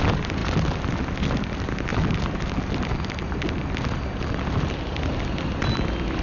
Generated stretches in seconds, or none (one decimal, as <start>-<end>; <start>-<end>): none